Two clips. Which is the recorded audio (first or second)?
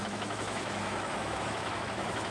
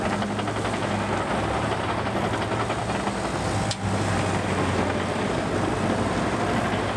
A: second